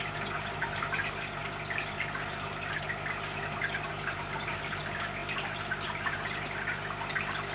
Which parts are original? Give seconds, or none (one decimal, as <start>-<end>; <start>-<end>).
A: 0.0-7.5